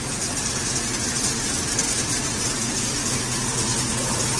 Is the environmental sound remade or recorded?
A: recorded